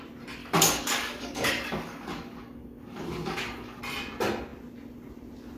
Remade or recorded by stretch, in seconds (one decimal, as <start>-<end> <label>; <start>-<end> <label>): 0.0-0.4 recorded; 0.4-3.8 remade; 3.8-5.6 recorded